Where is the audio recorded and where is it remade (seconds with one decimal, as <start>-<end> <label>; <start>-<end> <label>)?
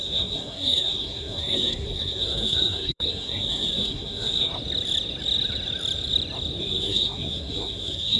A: 0.0-4.5 remade; 4.5-6.6 recorded; 6.6-8.2 remade